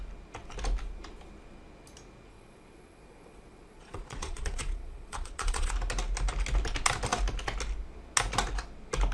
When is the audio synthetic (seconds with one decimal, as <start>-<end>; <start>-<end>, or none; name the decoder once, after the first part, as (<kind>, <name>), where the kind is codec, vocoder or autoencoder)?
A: 2.3-5.7 (vocoder, Vocos)